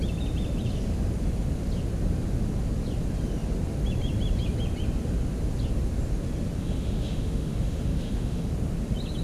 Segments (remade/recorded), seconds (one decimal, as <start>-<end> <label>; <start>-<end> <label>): 0.0-6.6 recorded; 6.6-8.5 remade; 8.5-9.2 recorded